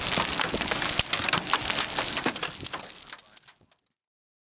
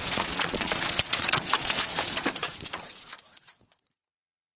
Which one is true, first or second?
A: first